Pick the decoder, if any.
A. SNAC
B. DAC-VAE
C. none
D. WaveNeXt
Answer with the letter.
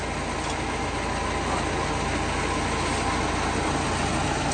C